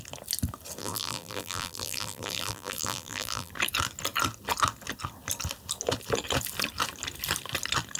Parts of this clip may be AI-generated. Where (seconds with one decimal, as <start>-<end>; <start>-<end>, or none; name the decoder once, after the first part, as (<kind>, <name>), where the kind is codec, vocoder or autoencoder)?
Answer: 0.8-3.5 (vocoder, BigVGAN v2)